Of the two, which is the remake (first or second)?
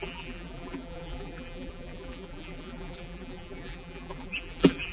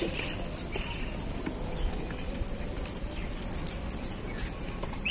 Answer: first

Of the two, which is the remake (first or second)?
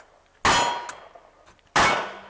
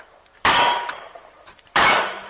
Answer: second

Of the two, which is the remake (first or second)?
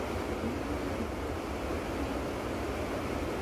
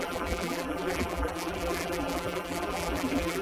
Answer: second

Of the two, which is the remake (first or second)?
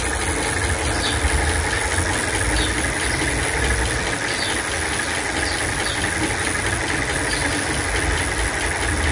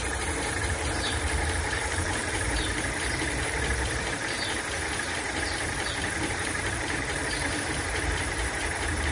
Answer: second